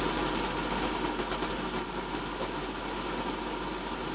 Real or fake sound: real